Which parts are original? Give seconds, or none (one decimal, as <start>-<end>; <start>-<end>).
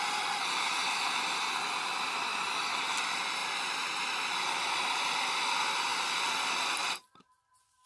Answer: 0.0-2.3; 3.0-7.9